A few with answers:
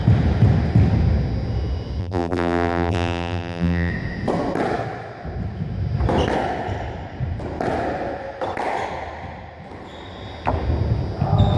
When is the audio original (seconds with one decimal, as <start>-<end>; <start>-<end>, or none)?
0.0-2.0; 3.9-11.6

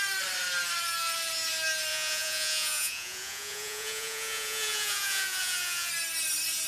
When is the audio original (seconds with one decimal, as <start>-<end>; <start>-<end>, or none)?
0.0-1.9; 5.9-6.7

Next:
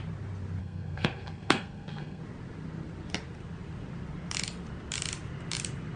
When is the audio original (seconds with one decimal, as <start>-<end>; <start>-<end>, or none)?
0.0-0.6; 2.2-6.0